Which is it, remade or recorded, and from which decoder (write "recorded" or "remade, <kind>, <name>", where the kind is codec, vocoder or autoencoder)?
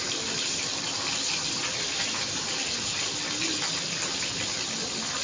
recorded